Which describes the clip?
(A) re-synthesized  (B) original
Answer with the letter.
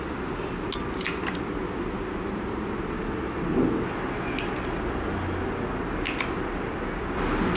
B